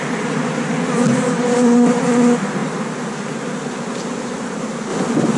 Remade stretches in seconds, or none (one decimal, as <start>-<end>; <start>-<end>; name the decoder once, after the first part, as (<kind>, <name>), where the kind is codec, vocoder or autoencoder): none